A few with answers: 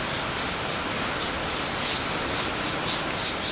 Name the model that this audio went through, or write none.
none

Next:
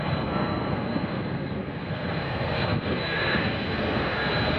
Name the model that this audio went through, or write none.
codec, SNAC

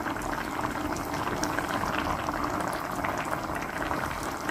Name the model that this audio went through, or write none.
none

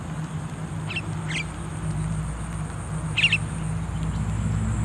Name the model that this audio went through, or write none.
none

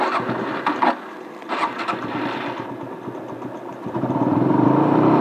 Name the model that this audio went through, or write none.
vocoder, BigVGAN v2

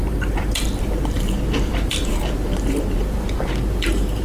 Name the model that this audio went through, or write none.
vocoder, BigVGAN v2